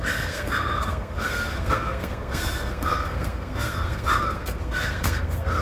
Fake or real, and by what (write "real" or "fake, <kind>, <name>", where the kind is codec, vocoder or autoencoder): fake, codec, SNAC